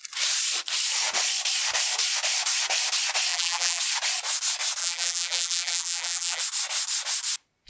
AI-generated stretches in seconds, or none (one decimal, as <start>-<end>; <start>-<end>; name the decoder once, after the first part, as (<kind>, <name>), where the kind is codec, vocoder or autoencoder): 3.3-3.8 (vocoder, BigVGAN v2); 4.8-6.4